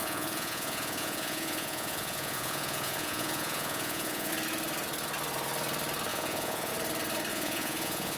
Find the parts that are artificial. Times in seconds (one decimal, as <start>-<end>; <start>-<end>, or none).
0.0-4.3; 6.1-6.7; 7.3-8.2